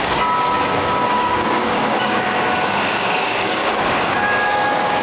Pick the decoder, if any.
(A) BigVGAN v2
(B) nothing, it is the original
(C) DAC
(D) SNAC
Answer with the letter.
C